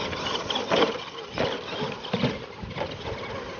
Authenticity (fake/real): real